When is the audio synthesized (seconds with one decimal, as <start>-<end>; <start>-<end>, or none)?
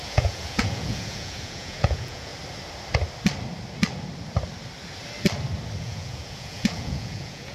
0.0-2.3; 5.8-7.5